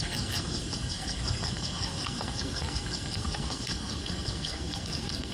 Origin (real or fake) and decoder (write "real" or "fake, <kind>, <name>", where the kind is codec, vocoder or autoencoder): fake, codec, SNAC